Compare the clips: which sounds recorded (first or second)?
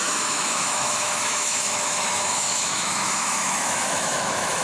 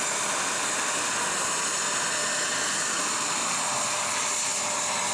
second